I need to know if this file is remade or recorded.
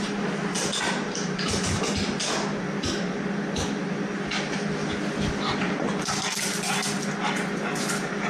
recorded